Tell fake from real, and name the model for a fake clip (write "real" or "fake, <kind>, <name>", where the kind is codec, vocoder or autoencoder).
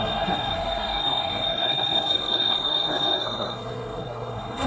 fake, codec, SNAC